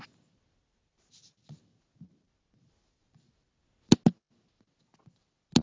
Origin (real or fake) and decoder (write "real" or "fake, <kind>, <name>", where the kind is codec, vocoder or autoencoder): real